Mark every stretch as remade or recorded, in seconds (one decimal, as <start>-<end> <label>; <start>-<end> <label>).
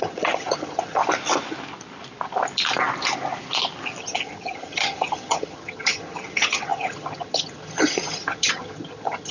0.0-1.0 remade; 1.0-4.0 recorded; 4.0-9.3 remade